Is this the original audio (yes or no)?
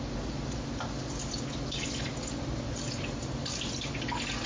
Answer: yes